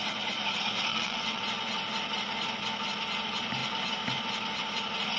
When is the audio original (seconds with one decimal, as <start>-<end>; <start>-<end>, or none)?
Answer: 0.0-0.9; 1.4-5.2